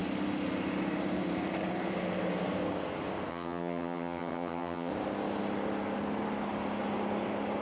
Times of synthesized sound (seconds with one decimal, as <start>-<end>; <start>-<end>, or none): 3.3-4.9